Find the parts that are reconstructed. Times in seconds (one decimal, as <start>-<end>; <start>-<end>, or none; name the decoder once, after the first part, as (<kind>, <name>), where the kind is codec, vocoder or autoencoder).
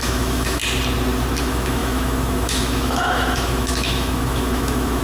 0.0-0.6 (autoencoder, DAC-VAE); 1.4-5.0